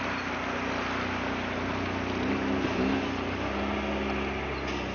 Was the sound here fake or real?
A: real